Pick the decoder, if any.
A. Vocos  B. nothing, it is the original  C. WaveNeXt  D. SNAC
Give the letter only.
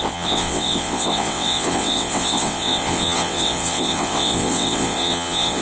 C